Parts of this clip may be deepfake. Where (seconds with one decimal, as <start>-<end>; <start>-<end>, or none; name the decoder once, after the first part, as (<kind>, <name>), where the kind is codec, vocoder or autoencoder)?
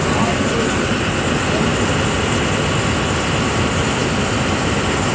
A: none